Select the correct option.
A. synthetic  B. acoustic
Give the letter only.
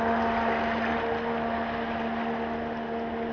B